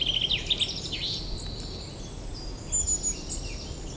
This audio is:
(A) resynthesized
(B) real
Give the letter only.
B